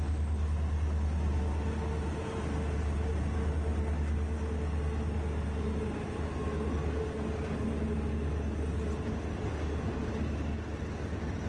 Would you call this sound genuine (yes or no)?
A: yes